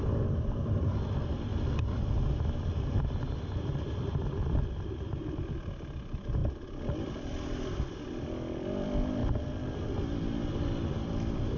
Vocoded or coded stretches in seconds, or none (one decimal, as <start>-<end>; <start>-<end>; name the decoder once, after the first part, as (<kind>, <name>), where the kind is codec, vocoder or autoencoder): none